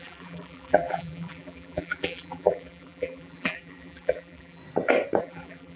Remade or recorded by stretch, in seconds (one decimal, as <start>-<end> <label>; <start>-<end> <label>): 0.0-4.6 remade; 4.6-5.2 recorded; 5.2-5.8 remade